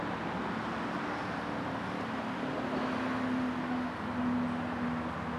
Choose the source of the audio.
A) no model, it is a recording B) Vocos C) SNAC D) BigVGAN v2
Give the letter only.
A